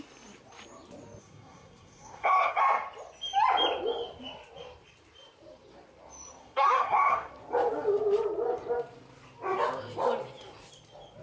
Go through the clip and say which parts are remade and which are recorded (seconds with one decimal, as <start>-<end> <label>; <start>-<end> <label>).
0.0-1.2 recorded; 1.2-2.6 remade; 2.6-6.4 recorded; 6.4-7.3 remade; 7.3-11.2 recorded